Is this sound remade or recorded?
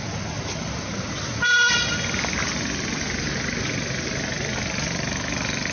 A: recorded